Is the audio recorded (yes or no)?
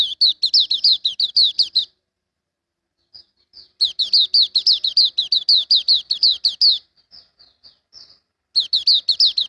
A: yes